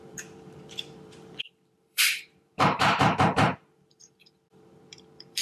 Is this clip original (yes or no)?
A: no